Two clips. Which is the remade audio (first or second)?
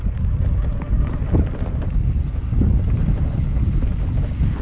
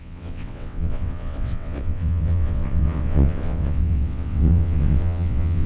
second